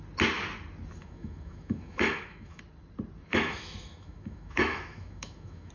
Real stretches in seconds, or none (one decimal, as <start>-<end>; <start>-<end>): 0.0-1.0; 2.6-3.3